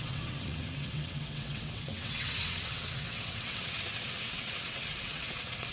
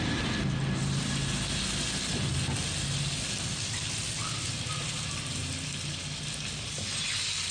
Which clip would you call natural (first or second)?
second